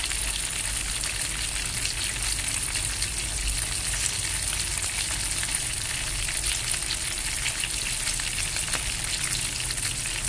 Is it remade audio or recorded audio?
recorded